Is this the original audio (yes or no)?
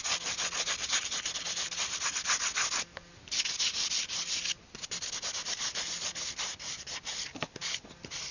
yes